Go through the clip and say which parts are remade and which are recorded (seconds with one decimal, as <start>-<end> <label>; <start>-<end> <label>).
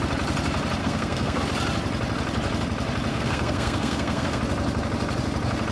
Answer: 0.0-0.8 recorded; 0.8-1.4 remade; 1.4-3.1 recorded; 3.1-4.4 remade; 4.4-5.7 recorded